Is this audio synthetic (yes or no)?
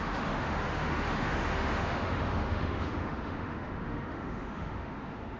yes